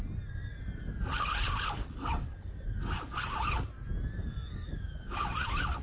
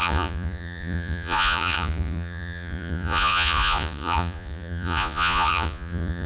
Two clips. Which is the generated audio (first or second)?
second